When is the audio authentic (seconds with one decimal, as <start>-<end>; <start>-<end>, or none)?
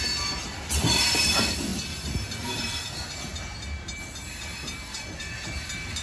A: 0.0-6.0